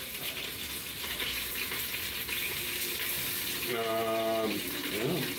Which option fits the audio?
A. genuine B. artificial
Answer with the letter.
A